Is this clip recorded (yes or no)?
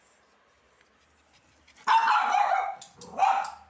yes